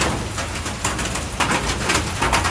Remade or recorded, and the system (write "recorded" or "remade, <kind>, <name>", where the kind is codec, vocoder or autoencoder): recorded